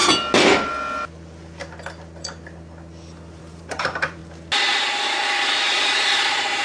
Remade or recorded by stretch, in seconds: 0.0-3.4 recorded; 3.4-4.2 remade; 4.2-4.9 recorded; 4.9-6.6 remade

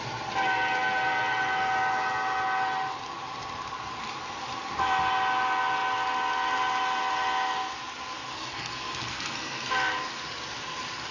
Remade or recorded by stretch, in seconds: 0.0-8.3 recorded; 8.3-9.7 remade; 9.7-11.1 recorded

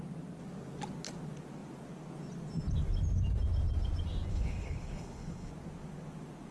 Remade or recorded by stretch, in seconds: 0.0-4.3 recorded; 4.3-5.5 remade; 5.5-6.5 recorded

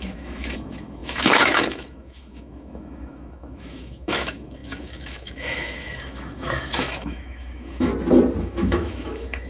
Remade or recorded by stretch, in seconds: 0.0-7.9 remade; 7.9-8.4 recorded; 8.4-9.5 remade

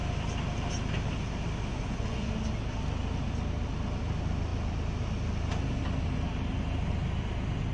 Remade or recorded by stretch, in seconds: 0.0-1.7 recorded; 1.7-2.3 remade; 2.3-7.7 recorded